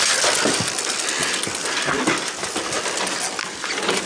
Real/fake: real